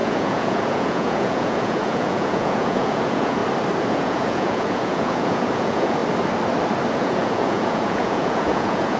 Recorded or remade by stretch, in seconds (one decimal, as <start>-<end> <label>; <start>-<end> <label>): 0.0-3.4 remade; 3.4-3.9 recorded; 3.9-6.0 remade; 6.0-6.9 recorded; 6.9-9.0 remade